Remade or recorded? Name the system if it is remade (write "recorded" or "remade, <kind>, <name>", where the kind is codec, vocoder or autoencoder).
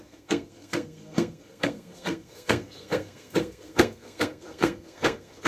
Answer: remade, codec, SNAC